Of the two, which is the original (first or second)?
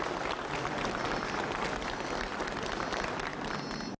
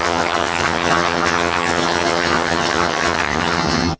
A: first